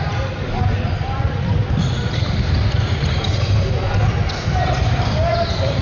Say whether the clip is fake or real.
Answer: real